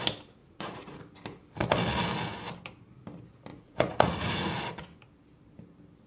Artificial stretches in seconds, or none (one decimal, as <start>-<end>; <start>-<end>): 0.4-1.0; 3.5-4.5

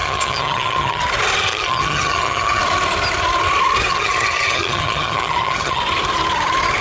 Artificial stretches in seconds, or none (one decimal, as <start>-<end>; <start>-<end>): 0.0-1.0; 1.5-2.6; 3.9-5.8

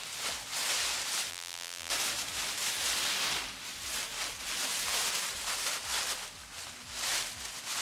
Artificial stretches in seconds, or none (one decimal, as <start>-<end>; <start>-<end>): 1.3-1.9

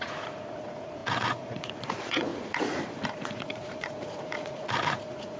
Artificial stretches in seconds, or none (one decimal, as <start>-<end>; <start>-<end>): 0.0-5.4

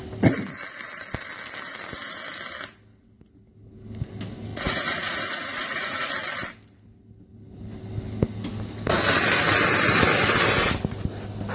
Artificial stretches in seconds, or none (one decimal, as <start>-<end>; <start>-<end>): 4.5-6.1

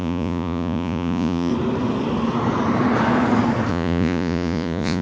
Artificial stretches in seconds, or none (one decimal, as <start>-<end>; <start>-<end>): 0.0-1.5; 3.7-5.0

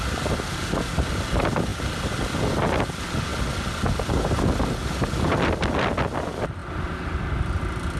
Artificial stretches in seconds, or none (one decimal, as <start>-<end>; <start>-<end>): none

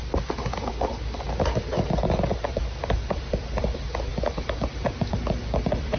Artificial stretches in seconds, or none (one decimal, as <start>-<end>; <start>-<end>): 2.6-4.1; 4.7-6.0